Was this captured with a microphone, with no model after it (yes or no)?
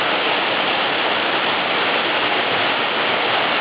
yes